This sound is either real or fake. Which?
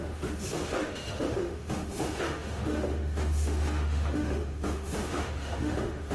fake